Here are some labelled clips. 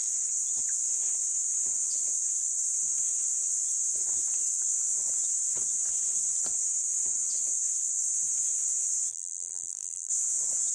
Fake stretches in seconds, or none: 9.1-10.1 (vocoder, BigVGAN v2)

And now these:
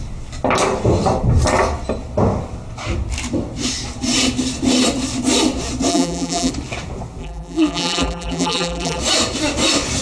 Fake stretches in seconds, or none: 5.9-6.5 (vocoder, BigVGAN v2); 7.2-9.0

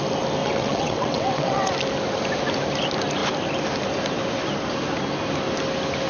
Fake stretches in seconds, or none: 0.4-1.7 (vocoder, WaveNeXt)